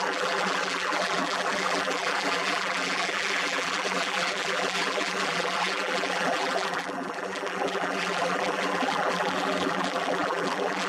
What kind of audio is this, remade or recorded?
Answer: remade